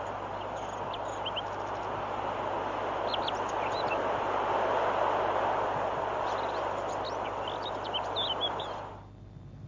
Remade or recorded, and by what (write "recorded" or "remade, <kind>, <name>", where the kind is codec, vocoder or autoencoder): recorded